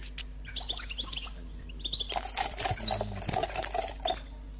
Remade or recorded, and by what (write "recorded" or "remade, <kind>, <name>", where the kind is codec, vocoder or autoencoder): recorded